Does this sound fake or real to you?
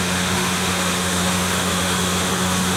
fake